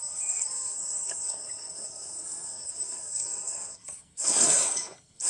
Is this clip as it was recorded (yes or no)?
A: no